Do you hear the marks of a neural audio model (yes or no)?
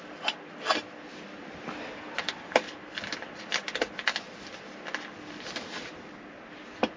no